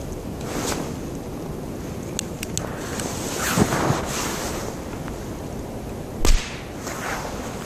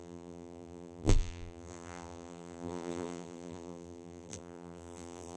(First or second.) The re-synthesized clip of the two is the second